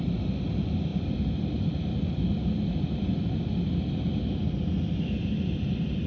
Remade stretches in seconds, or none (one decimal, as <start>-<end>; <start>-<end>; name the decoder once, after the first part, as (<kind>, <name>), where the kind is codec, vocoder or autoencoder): none